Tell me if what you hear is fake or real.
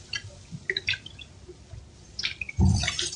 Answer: real